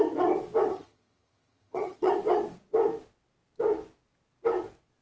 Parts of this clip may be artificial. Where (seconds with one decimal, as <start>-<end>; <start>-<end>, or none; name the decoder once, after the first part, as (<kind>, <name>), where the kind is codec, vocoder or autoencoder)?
0.7-2.1 (vocoder, HiFi-GAN)